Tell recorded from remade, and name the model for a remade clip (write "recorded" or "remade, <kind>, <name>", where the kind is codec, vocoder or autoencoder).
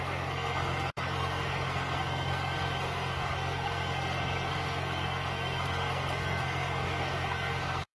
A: remade, codec, SNAC